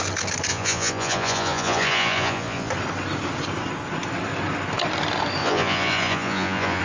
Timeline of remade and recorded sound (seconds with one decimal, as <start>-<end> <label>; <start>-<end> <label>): 0.0-0.5 recorded; 0.5-2.7 remade; 2.7-5.4 recorded; 5.4-6.8 remade